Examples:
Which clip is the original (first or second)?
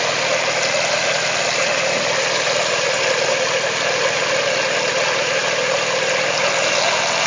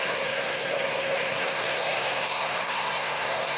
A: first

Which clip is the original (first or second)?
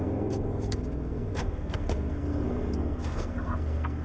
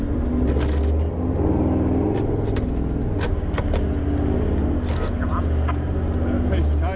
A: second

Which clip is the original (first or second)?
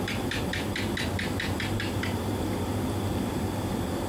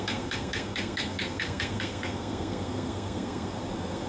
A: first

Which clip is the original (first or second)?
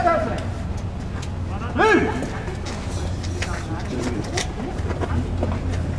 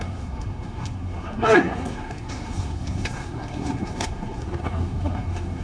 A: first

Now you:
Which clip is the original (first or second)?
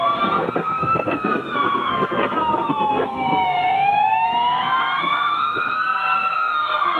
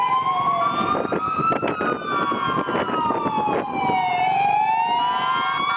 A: second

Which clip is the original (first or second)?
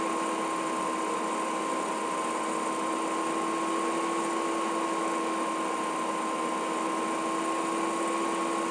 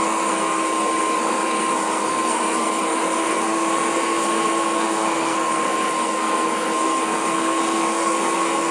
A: first